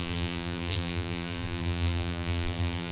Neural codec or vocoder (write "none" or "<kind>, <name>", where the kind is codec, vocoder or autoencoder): vocoder, BigVGAN v2